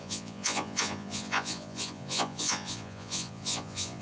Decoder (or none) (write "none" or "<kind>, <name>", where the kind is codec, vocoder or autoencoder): vocoder, Vocos